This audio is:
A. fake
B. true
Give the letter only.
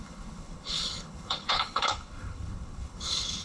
A